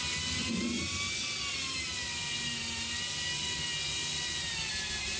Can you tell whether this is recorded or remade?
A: recorded